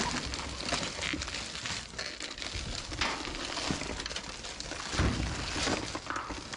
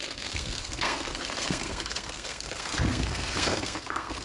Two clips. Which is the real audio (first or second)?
first